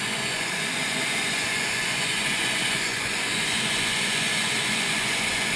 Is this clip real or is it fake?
fake